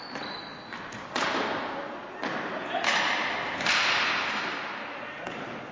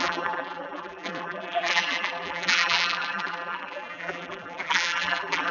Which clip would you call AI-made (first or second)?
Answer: second